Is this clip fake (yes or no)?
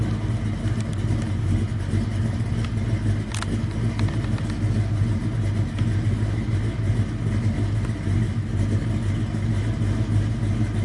no